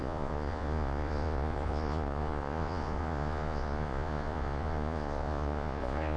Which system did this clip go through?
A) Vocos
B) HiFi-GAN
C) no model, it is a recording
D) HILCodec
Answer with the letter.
A